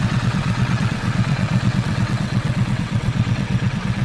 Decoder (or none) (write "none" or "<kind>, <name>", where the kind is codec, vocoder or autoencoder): vocoder, WaveNeXt